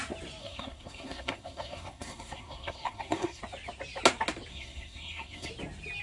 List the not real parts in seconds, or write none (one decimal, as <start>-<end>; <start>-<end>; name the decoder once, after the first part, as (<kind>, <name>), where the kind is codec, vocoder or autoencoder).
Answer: 0.4-3.4 (codec, SNAC); 4.5-5.5